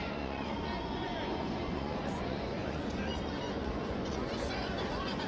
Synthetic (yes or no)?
yes